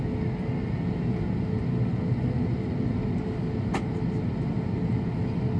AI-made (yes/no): no